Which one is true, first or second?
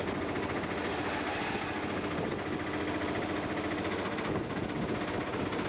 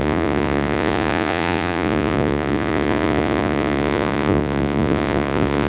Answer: first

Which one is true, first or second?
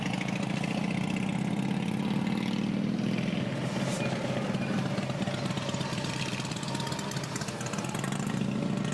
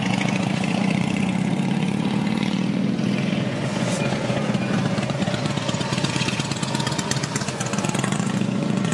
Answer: first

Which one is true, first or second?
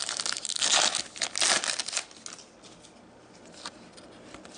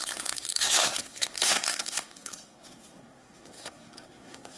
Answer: first